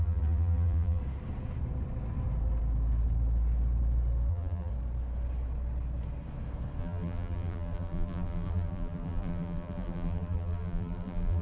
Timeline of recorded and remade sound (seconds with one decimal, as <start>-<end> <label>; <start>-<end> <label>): 0.0-1.0 remade; 1.0-4.3 recorded; 4.3-4.7 remade; 4.7-6.8 recorded; 6.8-11.4 remade